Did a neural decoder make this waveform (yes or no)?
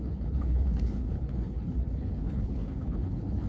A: yes